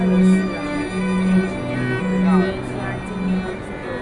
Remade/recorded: recorded